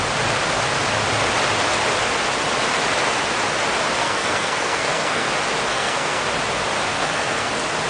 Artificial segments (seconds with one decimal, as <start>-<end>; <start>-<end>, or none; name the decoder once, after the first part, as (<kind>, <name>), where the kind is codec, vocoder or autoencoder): 4.0-5.3 (codec, SNAC); 5.7-6.2; 6.9-7.5